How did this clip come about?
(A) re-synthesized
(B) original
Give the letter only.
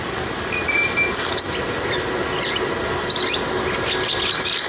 B